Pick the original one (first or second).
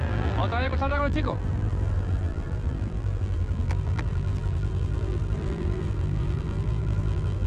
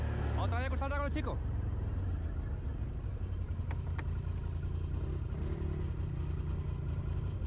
second